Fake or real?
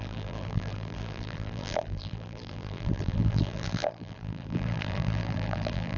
fake